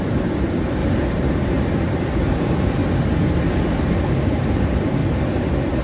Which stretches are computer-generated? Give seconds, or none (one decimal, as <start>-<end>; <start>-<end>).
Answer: 0.0-2.8; 4.2-5.0